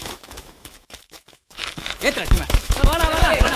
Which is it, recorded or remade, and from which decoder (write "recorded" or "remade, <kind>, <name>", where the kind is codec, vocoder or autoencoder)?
remade, autoencoder, DAC-VAE